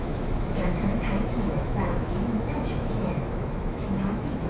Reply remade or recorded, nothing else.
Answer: remade